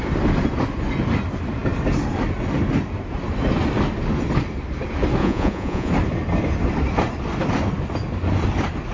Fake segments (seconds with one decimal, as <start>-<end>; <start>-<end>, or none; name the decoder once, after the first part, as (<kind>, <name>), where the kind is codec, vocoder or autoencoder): 5.2-5.9 (vocoder, Vocos)